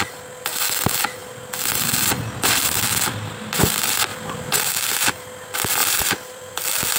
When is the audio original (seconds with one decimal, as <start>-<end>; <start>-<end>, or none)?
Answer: 0.0-4.1; 4.6-5.8